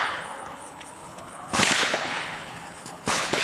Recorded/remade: remade